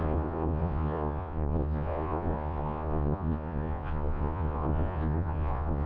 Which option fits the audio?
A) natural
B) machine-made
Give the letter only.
B